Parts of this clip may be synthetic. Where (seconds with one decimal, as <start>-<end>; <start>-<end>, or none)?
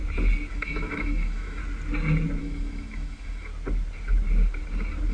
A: 0.5-1.6; 2.4-3.5